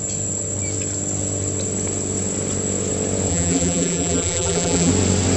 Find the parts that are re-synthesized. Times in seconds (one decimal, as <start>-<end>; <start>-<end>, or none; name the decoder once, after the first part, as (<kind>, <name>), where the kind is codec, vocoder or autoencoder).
3.3-4.9 (vocoder, BigVGAN v2)